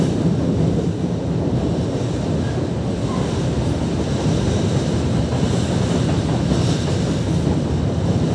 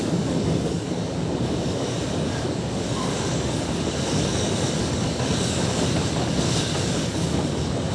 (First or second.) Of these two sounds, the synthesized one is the second